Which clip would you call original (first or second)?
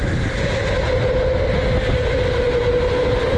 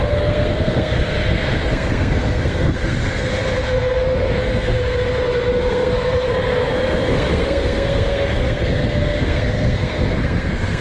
first